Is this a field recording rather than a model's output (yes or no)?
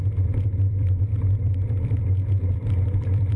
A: no